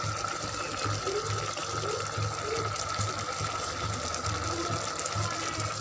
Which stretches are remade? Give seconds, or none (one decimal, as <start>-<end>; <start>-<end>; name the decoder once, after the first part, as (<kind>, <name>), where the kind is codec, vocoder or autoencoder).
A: none